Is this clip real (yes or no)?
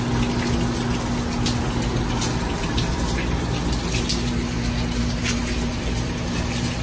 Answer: yes